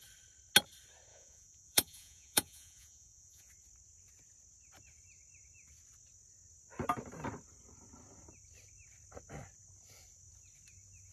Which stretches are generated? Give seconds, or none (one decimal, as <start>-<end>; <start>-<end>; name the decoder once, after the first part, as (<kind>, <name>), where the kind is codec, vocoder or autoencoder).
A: 1.1-3.5 (vocoder, Vocos)